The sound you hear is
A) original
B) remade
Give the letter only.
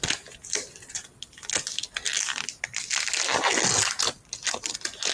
A